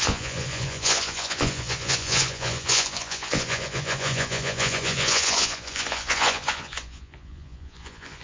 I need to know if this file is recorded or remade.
remade